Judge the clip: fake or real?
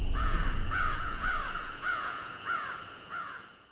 fake